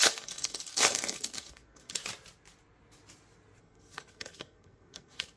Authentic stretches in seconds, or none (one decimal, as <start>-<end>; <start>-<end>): 2.0-3.6